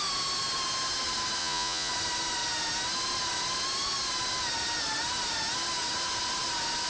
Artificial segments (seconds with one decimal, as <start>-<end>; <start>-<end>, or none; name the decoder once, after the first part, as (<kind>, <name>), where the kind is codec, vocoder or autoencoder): 1.4-1.9 (vocoder, Vocos)